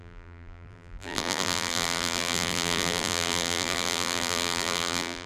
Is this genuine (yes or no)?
no